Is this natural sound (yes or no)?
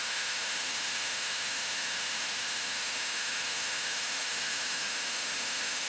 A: no